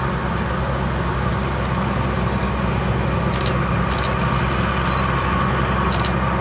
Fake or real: real